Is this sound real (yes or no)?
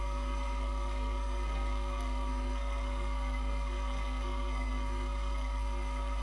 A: no